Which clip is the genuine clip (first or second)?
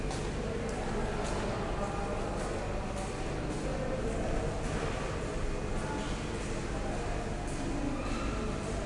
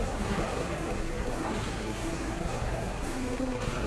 first